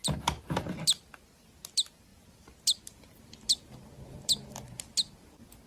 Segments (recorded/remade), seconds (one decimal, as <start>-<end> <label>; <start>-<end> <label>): 0.0-5.7 recorded